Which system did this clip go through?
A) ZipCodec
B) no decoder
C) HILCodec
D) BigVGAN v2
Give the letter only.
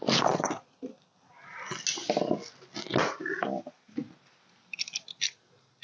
B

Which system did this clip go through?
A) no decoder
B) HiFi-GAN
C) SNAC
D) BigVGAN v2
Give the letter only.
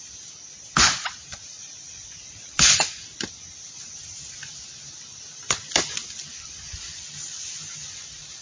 A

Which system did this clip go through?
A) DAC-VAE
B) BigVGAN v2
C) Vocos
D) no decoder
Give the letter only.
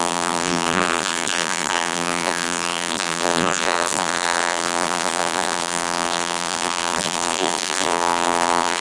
B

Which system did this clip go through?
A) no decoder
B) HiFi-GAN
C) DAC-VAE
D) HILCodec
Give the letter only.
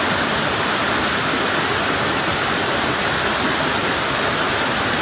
A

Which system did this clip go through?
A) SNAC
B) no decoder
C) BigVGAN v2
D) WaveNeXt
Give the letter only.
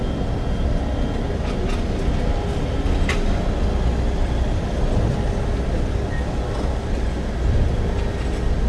B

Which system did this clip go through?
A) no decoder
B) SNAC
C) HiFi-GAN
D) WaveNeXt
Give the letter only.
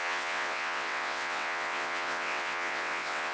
D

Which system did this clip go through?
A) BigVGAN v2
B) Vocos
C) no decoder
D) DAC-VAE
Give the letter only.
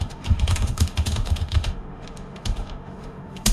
D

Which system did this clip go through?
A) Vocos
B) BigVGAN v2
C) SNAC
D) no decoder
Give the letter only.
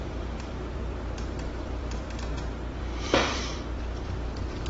B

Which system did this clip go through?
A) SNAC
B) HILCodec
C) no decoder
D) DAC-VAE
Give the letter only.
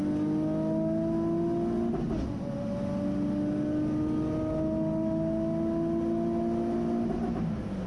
C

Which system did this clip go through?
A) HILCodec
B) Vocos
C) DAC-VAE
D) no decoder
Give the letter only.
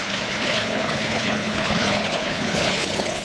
A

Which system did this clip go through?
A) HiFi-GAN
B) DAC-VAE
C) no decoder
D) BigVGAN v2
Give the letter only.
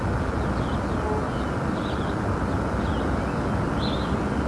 C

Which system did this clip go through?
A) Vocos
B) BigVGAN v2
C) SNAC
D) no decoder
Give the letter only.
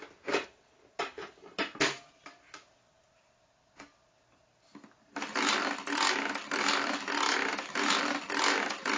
D